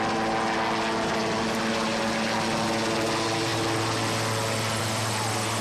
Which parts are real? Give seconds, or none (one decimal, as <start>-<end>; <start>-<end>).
0.0-5.6